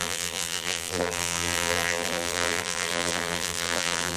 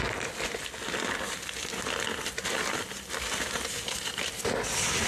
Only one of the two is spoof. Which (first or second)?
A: first